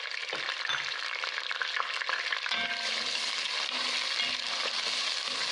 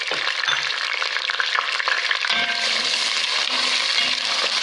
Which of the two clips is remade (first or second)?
second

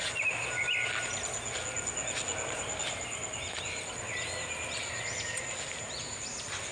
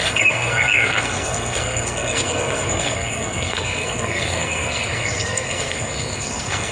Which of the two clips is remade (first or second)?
second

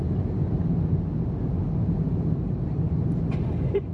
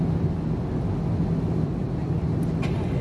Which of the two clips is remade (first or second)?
first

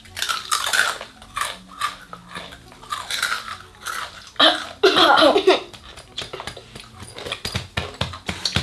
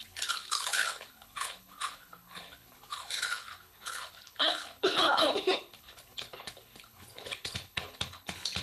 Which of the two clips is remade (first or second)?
second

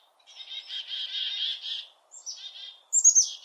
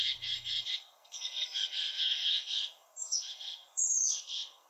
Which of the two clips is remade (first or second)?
second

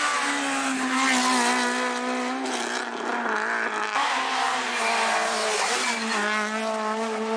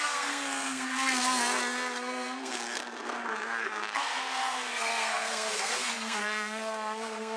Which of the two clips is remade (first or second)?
second